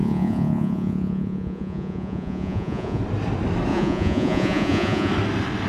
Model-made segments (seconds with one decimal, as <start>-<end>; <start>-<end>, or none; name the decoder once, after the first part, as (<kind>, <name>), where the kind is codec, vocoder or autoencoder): 0.0-3.0 (vocoder, Vocos); 3.7-5.1